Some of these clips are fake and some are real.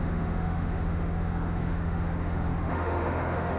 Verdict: fake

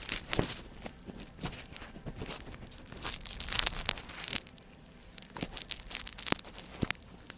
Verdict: fake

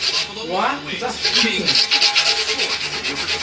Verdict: real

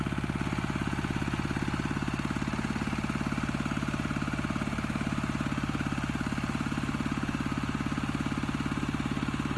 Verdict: real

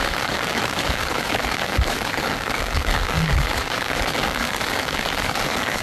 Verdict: fake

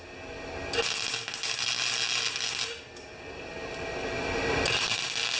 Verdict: real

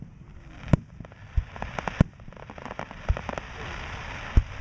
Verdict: fake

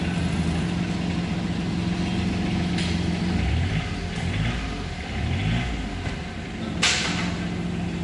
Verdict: real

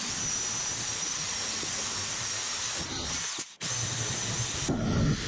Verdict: real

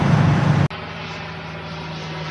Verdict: real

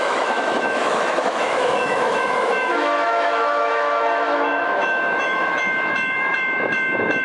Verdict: fake